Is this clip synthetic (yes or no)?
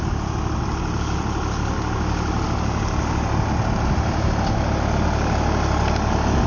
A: no